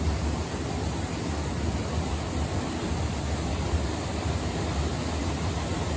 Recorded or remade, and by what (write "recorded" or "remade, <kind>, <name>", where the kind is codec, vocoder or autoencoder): recorded